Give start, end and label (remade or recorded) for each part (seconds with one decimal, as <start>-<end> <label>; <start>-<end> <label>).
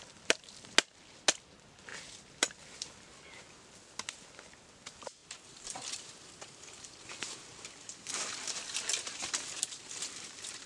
0.0-10.7 recorded